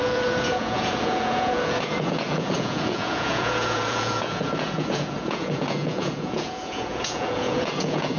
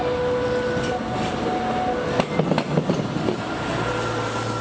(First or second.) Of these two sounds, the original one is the second